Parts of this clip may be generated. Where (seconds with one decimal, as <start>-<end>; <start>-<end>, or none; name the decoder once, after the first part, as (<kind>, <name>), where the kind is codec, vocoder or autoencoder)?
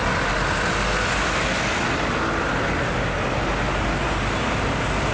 none